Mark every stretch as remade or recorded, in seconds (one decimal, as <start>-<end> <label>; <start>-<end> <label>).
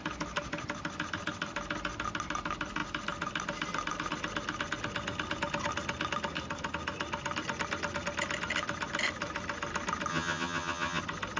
0.0-10.1 recorded; 10.1-11.0 remade; 11.0-11.4 recorded